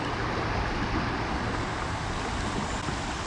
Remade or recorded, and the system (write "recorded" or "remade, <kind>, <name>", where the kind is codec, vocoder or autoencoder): recorded